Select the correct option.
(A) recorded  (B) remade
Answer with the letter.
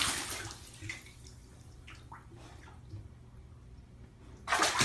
A